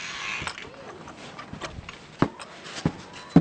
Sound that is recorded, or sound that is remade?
recorded